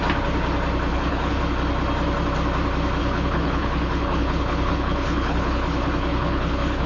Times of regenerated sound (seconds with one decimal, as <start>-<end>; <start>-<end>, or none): 0.9-1.4; 3.0-6.9